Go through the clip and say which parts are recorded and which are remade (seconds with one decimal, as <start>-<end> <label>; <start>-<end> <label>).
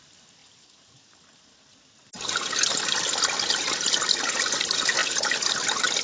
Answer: 0.0-5.0 recorded; 5.0-5.6 remade; 5.6-6.0 recorded